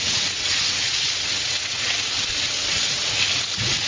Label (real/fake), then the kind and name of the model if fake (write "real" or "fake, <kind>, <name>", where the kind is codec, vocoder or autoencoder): fake, vocoder, WaveNeXt